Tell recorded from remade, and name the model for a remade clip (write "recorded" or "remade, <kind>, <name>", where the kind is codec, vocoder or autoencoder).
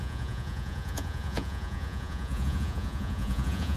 remade, vocoder, Vocos